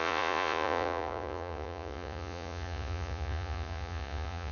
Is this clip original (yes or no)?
no